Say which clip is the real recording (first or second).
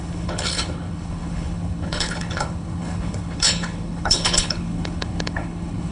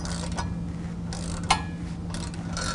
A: second